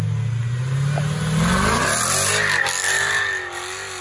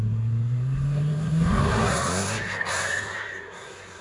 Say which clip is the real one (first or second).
first